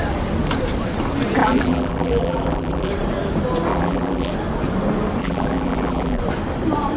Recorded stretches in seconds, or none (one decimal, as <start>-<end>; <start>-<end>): 0.0-1.4; 2.9-3.7; 4.3-5.2; 6.2-7.0